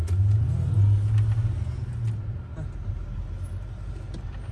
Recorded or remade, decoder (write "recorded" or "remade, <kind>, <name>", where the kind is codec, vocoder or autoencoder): recorded